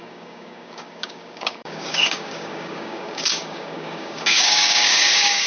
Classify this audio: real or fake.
fake